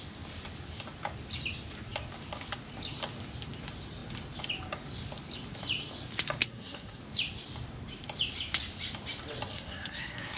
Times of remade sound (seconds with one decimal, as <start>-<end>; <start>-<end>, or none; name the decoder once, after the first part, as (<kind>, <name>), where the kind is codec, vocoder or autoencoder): 6.4-7.0 (codec, SNAC); 9.5-10.4